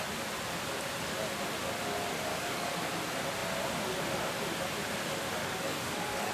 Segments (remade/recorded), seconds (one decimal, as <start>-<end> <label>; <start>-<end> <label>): 0.0-2.3 recorded; 2.3-2.9 remade; 2.9-5.4 recorded; 5.4-6.3 remade